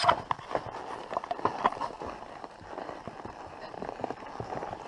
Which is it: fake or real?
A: real